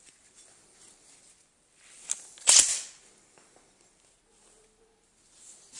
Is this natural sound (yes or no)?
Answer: yes